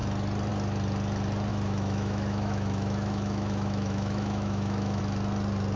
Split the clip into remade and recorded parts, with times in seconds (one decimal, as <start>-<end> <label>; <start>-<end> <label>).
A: 0.0-1.5 recorded; 1.5-5.0 remade; 5.0-5.8 recorded